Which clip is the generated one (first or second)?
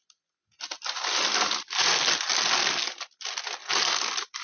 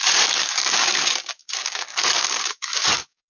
second